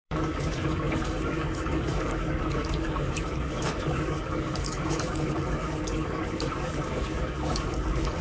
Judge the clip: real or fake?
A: fake